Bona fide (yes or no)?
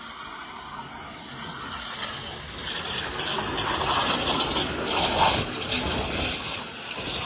yes